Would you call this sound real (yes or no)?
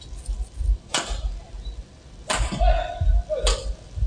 yes